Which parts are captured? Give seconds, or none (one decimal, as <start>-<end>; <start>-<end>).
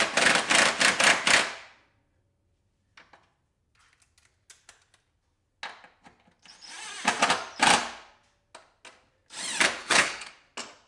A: 0.0-9.8; 10.3-10.9